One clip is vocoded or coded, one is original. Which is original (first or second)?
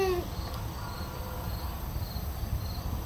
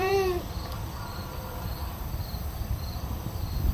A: first